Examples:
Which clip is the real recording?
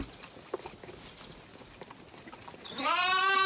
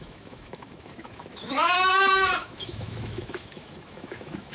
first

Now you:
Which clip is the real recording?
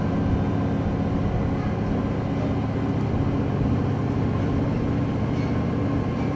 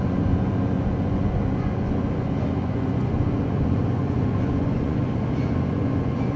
first